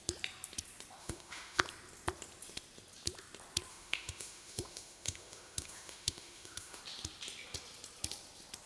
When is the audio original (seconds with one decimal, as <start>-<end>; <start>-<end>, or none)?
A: 0.0-1.0; 1.6-3.7; 6.8-8.7